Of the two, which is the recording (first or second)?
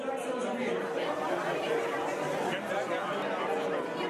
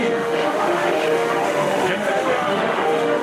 first